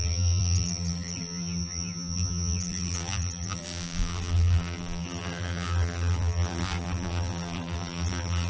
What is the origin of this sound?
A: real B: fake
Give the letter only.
B